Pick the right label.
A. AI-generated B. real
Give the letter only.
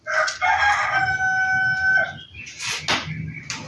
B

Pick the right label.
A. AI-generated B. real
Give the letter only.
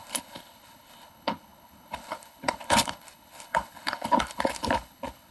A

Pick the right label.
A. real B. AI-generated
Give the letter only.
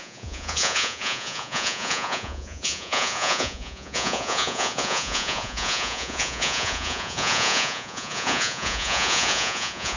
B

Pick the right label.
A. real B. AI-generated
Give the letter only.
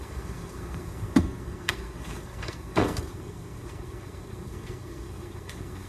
B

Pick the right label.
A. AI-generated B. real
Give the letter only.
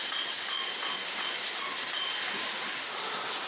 B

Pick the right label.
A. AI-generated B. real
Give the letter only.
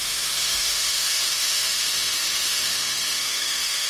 A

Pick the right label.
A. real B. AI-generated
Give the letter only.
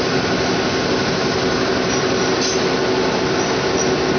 A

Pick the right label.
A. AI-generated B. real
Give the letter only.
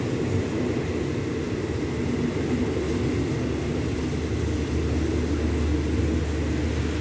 B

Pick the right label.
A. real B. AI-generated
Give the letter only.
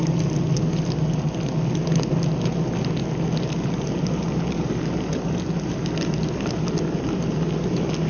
A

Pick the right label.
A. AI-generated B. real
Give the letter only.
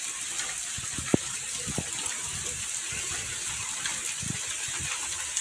B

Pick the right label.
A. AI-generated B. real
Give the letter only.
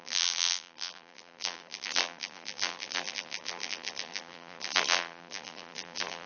A